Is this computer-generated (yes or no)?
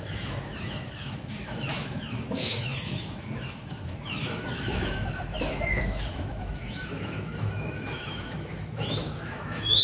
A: yes